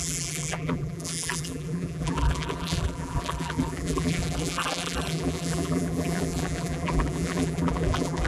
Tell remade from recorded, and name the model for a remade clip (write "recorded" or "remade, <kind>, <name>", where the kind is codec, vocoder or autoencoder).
remade, vocoder, BigVGAN v2